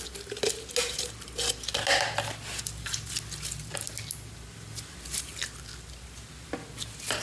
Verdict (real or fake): real